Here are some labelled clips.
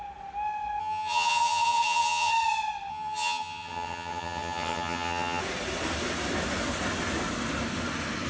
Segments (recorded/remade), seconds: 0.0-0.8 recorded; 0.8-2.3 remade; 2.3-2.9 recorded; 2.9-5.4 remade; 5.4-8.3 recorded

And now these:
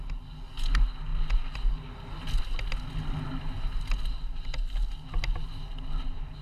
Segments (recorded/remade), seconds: 0.0-6.4 recorded

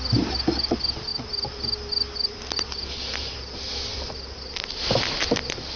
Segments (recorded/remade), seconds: 0.0-5.8 recorded

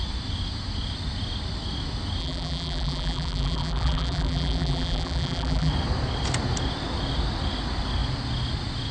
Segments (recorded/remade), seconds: 0.0-2.2 recorded; 2.2-5.7 remade; 5.7-8.9 recorded

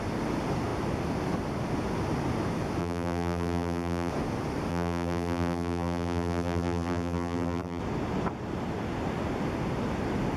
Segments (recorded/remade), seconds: 0.0-2.8 recorded; 2.8-4.1 remade; 4.1-4.7 recorded; 4.7-7.8 remade; 7.8-10.4 recorded

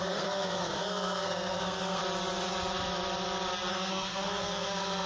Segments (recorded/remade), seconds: 0.0-2.0 remade; 2.0-3.7 recorded; 3.7-5.1 remade